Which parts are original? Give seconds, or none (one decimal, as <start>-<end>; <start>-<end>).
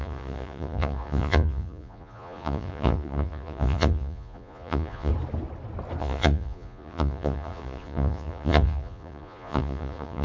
5.1-6.0